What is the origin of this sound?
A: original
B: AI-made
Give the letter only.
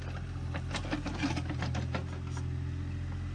A